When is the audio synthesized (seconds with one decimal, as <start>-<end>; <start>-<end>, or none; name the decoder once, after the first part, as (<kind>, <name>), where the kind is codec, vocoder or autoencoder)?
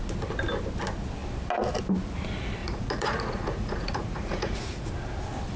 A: 2.6-4.9 (vocoder, Vocos)